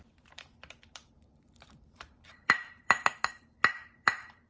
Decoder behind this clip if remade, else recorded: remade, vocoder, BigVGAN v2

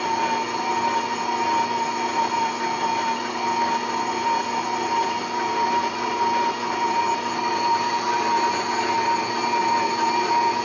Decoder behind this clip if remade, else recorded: recorded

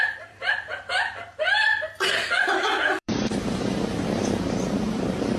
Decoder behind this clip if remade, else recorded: remade, vocoder, BigVGAN v2